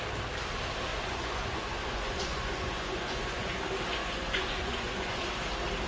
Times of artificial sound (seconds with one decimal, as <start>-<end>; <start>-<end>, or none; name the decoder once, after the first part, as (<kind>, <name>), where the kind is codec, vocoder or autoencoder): 0.9-3.6 (vocoder, Vocos); 4.0-5.2